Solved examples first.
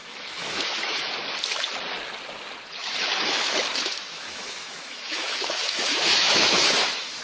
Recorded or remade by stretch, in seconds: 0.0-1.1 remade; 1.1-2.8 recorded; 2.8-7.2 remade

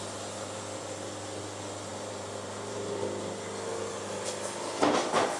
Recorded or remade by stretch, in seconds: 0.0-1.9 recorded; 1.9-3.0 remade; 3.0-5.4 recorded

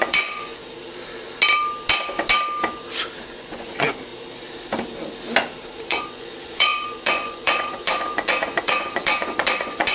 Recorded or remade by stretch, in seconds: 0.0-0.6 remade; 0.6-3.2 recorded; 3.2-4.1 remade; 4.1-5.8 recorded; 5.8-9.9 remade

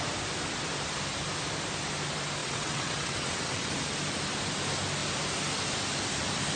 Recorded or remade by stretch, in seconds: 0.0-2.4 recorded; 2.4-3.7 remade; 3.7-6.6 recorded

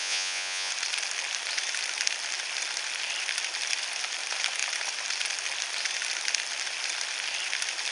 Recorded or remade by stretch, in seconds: 0.0-0.7 remade; 0.7-7.9 recorded

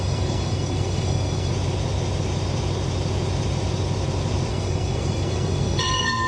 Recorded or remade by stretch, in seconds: 0.0-1.5 remade; 1.5-4.5 recorded; 4.5-6.3 remade